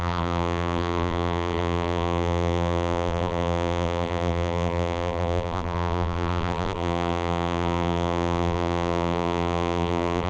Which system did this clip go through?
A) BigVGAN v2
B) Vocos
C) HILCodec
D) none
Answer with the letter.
A